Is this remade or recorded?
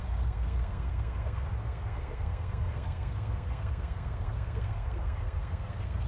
remade